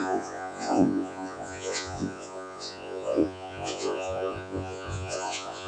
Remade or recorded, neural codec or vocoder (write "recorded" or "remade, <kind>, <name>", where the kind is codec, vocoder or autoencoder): remade, vocoder, Vocos